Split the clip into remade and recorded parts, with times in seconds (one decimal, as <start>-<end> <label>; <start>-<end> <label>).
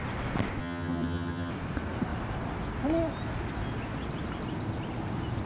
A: 0.0-0.6 recorded; 0.6-1.5 remade; 1.5-5.5 recorded